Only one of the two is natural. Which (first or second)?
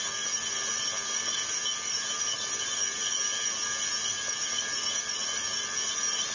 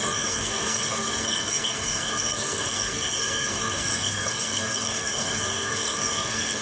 first